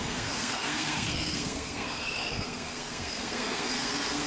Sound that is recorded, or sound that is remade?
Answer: remade